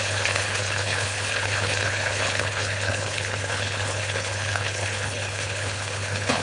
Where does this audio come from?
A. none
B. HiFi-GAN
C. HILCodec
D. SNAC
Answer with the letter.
C